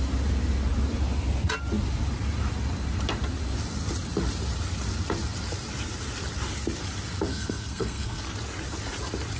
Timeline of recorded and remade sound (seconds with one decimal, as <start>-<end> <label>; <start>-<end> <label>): 0.0-7.3 recorded; 7.3-8.2 remade; 8.2-9.4 recorded